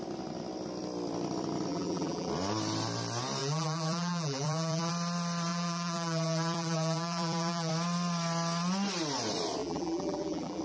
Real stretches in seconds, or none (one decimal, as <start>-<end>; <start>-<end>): 0.0-1.7; 2.3-3.4; 4.9-5.5; 7.7-9.6